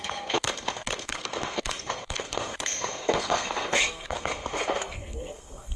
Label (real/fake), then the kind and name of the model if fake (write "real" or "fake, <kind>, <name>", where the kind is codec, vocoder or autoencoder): fake, codec, SNAC